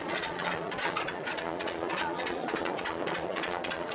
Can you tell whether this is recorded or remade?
remade